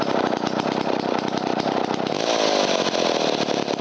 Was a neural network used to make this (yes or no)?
no